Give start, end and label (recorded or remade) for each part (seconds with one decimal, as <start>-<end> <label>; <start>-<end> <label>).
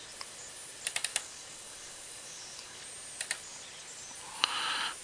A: 0.0-1.1 recorded; 1.1-2.8 remade; 2.8-5.0 recorded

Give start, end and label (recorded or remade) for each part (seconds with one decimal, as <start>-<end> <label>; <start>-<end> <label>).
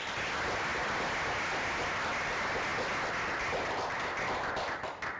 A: 0.0-2.7 remade; 2.7-4.8 recorded; 4.8-5.2 remade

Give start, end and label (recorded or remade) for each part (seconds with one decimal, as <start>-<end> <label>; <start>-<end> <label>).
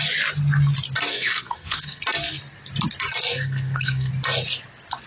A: 0.0-1.1 recorded; 1.1-2.0 remade; 2.0-3.3 recorded; 3.3-4.1 remade; 4.1-5.1 recorded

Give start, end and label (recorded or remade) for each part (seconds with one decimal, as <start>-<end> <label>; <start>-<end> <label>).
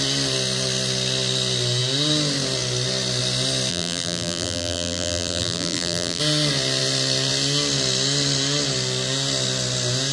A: 0.0-3.7 recorded; 3.7-6.2 remade; 6.2-10.1 recorded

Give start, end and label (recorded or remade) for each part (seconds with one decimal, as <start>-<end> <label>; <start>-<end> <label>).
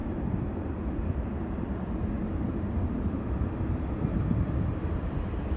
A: 0.0-3.4 remade; 3.4-5.6 recorded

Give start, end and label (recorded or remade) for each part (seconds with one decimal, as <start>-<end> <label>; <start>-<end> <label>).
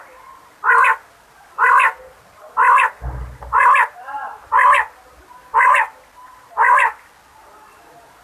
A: 0.0-8.2 recorded